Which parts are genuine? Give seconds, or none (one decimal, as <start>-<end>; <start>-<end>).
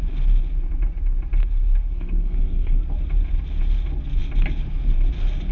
0.0-1.4; 2.8-5.5